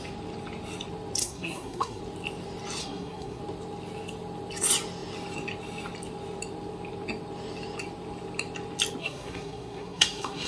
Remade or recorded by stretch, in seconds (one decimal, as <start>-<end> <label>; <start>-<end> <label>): 0.0-1.2 recorded; 1.2-2.0 remade; 2.0-2.8 recorded; 2.8-3.4 remade; 3.4-9.0 recorded; 9.0-10.5 remade